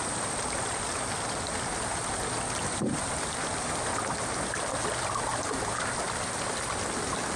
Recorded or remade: recorded